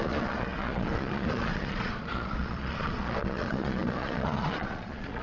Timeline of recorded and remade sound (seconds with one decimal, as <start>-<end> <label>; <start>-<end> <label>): 0.0-5.2 remade